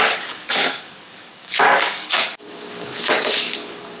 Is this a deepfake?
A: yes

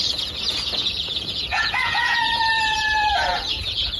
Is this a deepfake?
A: yes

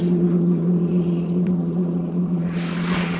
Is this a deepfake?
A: yes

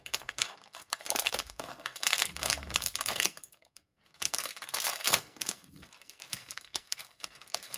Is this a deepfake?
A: yes